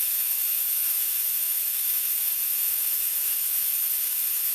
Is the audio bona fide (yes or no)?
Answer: no